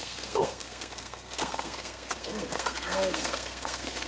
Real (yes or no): no